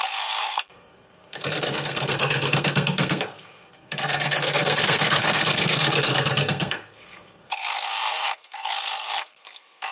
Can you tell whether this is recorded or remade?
remade